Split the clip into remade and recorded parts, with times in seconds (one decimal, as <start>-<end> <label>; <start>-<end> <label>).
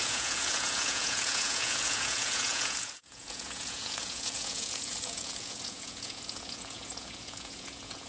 0.0-8.1 remade